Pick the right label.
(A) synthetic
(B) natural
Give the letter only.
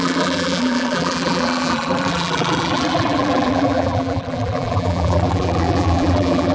A